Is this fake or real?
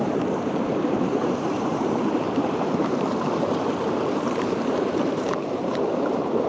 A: fake